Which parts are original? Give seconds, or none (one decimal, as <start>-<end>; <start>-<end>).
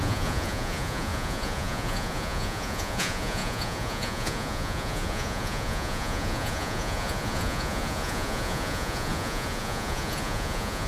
none